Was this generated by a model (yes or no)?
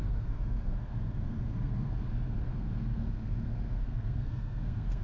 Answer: yes